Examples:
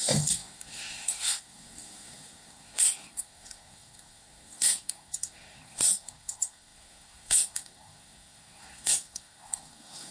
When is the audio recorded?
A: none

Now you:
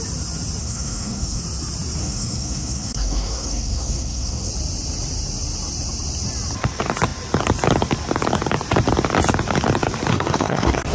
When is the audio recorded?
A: 0.0-0.6; 1.4-2.0; 4.5-10.1

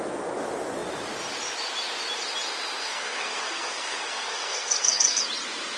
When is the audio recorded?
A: 0.0-2.8; 5.2-5.8